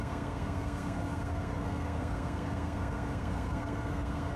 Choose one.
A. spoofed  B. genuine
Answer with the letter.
A